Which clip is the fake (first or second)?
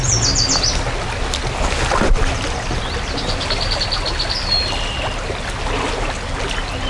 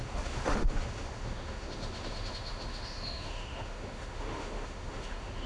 second